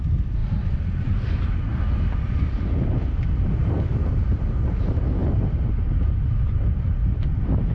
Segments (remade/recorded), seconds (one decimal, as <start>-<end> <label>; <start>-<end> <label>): 0.0-7.7 recorded